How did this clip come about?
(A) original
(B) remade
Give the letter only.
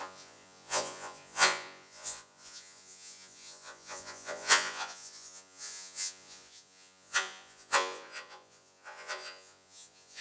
B